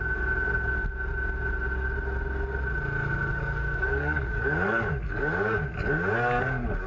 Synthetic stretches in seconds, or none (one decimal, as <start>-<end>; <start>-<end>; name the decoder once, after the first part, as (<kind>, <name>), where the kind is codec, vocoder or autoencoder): 3.3-6.1 (codec, DAC)